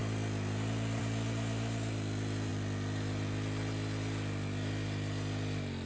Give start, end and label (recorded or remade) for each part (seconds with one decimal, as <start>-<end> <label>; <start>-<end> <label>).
0.0-5.9 recorded